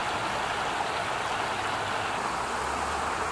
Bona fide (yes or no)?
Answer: yes